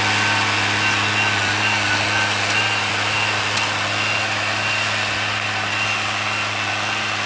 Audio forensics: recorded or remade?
recorded